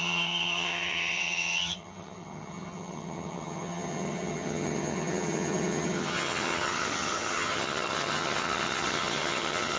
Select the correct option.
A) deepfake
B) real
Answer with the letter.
A